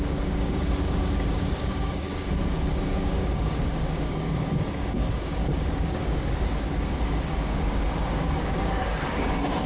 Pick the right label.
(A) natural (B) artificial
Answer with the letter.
B